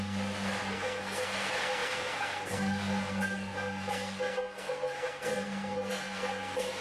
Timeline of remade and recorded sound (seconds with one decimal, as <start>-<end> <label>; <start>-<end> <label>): 0.0-6.8 remade